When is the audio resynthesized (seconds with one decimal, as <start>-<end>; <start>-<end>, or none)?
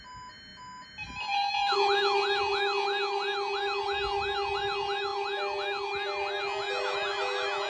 none